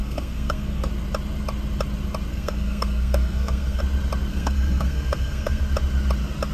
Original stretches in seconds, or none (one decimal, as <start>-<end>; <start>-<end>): 0.9-2.3; 3.8-4.3; 5.6-6.5